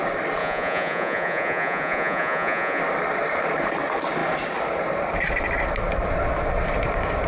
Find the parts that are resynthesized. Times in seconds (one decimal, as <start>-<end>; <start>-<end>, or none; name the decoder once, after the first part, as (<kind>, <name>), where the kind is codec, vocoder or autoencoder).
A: 0.4-2.8 (vocoder, Vocos)